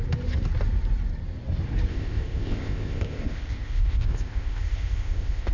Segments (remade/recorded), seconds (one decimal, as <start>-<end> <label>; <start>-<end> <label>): 0.0-1.9 recorded; 1.9-5.5 remade